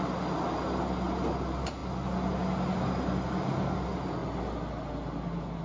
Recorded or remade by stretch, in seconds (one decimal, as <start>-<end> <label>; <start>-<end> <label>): 0.0-5.6 recorded

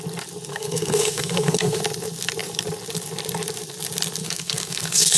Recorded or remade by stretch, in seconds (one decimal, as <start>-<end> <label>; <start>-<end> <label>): 0.0-0.5 recorded; 0.5-1.8 remade; 1.8-4.2 recorded; 4.2-5.2 remade

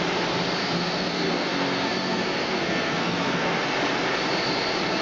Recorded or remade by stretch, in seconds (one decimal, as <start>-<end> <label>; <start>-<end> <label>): 0.0-0.6 recorded; 0.6-3.6 remade; 3.6-5.0 recorded

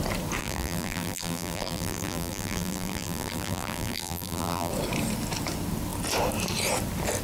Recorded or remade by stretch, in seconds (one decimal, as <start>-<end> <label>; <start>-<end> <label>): 0.0-0.4 recorded; 0.4-4.7 remade; 4.7-7.2 recorded

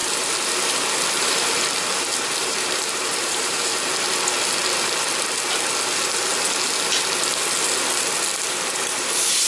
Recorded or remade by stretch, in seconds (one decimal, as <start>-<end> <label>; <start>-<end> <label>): 0.0-2.4 recorded; 2.4-3.7 remade; 3.7-8.5 recorded; 8.5-9.5 remade

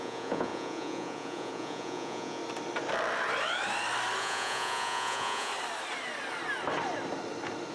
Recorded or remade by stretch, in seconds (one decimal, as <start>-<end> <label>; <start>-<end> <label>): 0.0-2.4 remade; 2.4-4.2 recorded; 4.2-5.5 remade; 5.5-7.7 recorded

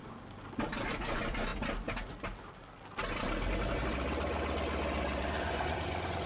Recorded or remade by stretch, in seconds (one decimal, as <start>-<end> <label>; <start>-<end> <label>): 0.0-0.9 recorded; 0.9-1.5 remade; 1.5-5.3 recorded; 5.3-6.3 remade